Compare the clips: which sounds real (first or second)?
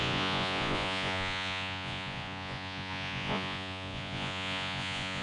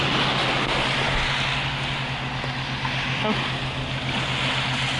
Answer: second